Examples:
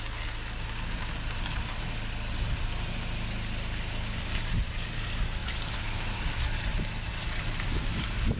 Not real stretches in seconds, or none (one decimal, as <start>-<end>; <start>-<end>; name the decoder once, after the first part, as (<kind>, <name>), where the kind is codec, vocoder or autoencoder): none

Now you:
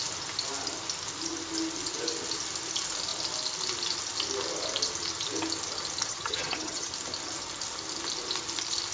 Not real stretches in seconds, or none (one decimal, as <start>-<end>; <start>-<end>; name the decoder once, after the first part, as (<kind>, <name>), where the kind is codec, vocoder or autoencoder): 6.1-6.9 (vocoder, HiFi-GAN)

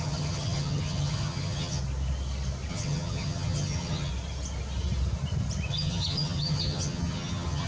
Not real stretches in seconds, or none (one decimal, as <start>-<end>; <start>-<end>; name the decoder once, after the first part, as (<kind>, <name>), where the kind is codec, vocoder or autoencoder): 0.0-1.8 (vocoder, HiFi-GAN); 2.7-4.1; 5.7-7.7